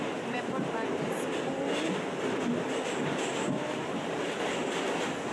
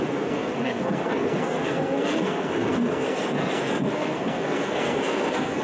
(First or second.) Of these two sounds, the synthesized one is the second